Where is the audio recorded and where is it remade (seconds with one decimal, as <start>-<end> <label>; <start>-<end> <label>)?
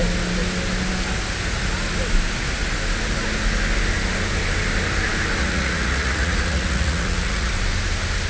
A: 0.0-5.4 recorded; 5.4-7.5 remade; 7.5-8.3 recorded